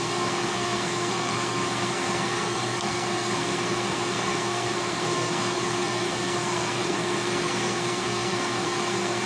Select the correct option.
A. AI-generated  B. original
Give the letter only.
A